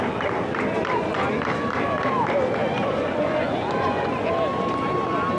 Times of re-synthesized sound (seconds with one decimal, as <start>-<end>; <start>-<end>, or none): 2.6-4.3